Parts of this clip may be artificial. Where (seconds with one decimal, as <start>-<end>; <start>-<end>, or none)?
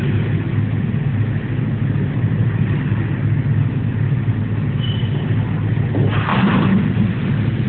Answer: 6.3-7.1